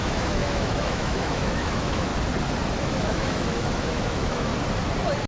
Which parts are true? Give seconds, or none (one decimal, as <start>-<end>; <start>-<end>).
2.1-2.8; 4.5-5.3